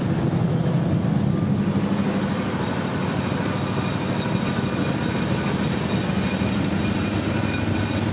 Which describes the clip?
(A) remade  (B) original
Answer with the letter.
B